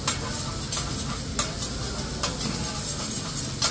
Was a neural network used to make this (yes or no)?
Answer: no